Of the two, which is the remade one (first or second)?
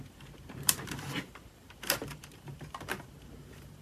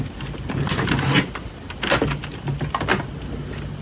first